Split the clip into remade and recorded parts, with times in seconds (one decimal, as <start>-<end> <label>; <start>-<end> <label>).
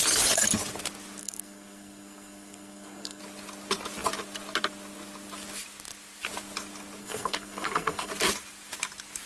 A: 0.0-1.2 recorded; 1.2-3.2 remade; 3.2-7.0 recorded; 7.0-8.1 remade; 8.1-9.3 recorded